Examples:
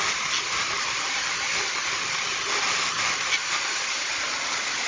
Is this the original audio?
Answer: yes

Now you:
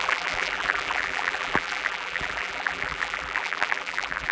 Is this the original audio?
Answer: no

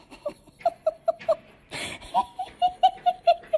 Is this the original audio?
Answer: no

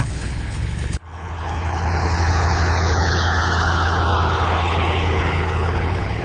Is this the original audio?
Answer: no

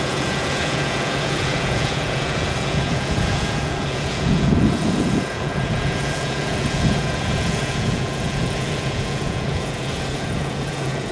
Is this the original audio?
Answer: no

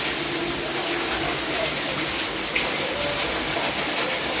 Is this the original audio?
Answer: yes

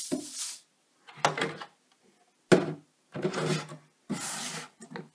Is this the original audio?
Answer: yes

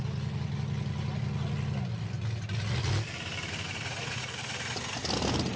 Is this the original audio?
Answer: yes